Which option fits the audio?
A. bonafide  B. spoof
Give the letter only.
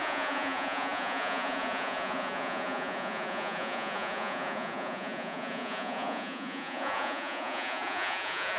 B